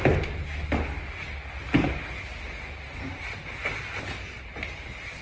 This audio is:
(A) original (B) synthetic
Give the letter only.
A